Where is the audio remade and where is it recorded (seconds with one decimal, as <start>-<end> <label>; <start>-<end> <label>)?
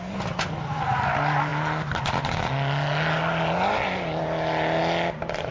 0.0-5.5 recorded